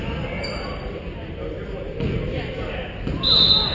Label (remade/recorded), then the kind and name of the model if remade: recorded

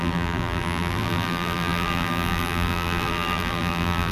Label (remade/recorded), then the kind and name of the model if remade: remade, vocoder, BigVGAN v2